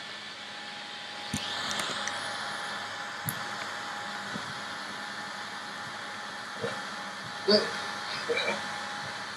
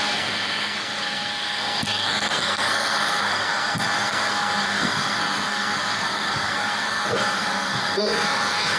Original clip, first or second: first